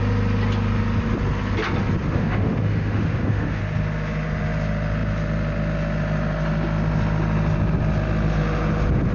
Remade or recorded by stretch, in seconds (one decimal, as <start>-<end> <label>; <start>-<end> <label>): 0.0-2.0 recorded; 2.0-3.6 remade; 3.6-9.1 recorded